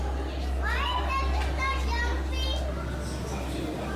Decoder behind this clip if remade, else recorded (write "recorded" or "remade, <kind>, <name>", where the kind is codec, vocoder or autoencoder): recorded